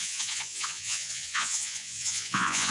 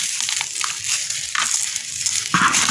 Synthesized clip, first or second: first